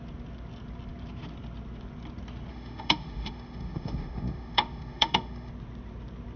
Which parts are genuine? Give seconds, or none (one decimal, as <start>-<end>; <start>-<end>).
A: 0.0-2.5; 5.5-6.4